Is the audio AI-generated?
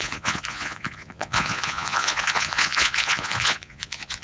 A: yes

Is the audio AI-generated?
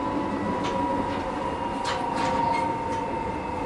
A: no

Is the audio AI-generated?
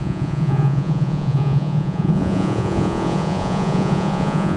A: yes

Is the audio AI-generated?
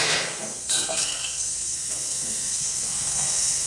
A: yes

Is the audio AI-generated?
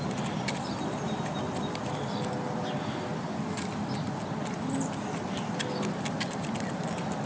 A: no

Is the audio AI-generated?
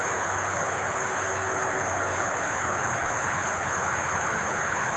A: yes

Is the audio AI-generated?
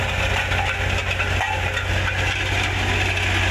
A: no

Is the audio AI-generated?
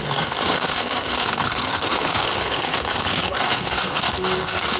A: yes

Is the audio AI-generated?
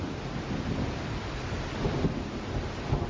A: no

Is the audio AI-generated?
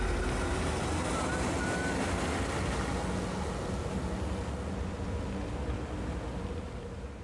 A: no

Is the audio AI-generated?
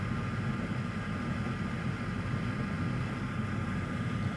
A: no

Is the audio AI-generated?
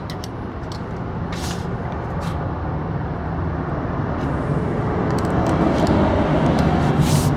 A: no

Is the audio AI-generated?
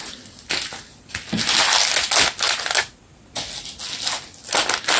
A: no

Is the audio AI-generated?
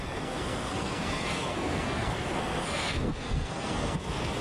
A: yes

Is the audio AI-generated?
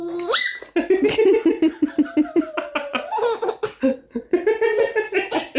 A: no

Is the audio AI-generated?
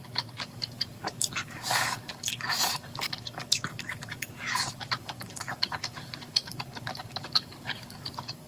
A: yes